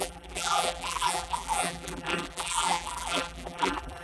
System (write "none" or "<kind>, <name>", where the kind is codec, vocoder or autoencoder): vocoder, BigVGAN v2